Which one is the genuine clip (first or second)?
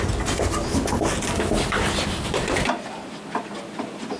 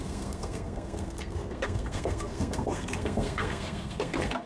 first